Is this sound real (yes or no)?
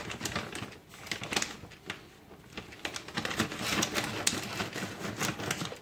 yes